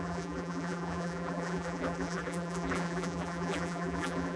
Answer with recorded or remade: remade